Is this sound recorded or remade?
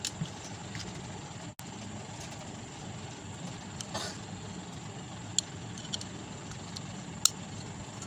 recorded